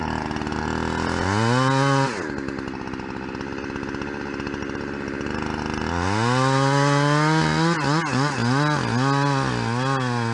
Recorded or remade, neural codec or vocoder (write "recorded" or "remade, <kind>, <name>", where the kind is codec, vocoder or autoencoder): recorded